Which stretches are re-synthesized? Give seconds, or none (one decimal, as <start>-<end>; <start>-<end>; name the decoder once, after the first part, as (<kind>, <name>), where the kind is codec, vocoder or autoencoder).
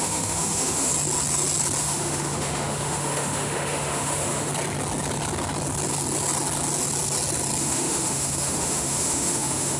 0.0-0.9 (autoencoder, DAC-VAE); 1.8-4.5; 7.6-9.8